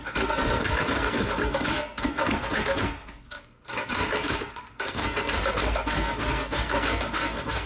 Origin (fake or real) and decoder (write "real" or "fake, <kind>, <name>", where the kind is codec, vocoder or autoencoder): fake, codec, SNAC